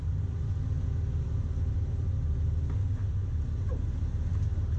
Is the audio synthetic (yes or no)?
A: yes